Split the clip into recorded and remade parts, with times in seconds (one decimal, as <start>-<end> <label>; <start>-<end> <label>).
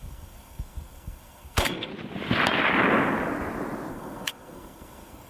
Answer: 0.0-1.9 remade; 1.9-3.9 recorded; 3.9-5.3 remade